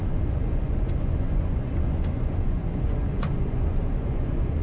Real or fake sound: fake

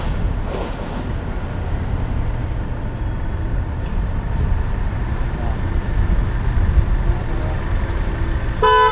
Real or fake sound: real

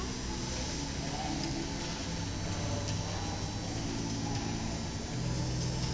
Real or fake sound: real